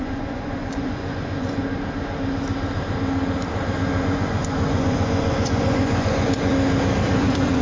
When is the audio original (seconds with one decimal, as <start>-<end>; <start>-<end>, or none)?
1.6-4.0; 6.5-7.1